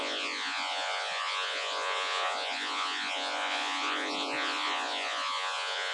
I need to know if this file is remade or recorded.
remade